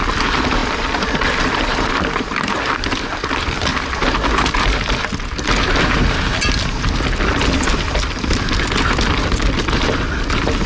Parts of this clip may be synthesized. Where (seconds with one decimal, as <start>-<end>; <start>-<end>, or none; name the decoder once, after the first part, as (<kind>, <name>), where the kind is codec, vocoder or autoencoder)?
none